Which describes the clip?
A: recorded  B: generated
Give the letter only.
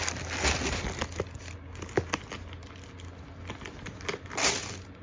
A